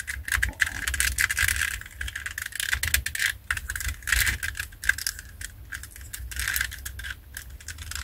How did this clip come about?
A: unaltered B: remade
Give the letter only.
A